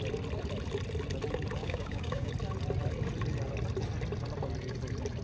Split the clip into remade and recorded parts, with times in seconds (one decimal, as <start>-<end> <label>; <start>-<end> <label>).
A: 0.0-1.6 recorded; 1.6-2.3 remade; 2.3-5.2 recorded